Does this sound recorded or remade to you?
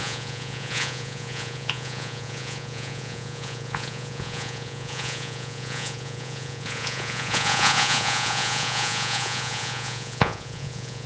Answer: remade